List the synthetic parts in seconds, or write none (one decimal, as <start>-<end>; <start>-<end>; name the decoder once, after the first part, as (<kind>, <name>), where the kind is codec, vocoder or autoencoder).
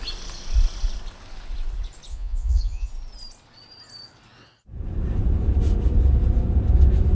2.1-2.9 (vocoder, Vocos)